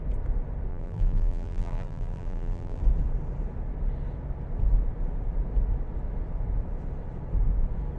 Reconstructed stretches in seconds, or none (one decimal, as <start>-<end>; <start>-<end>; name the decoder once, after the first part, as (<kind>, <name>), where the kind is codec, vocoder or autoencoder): 0.7-2.8 (vocoder, BigVGAN v2)